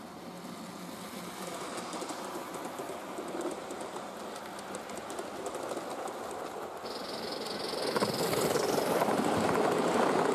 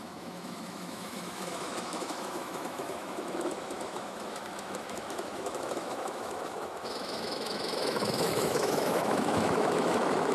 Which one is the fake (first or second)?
second